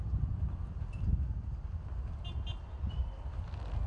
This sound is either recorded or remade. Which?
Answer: recorded